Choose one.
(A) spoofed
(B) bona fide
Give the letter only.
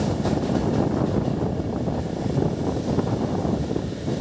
B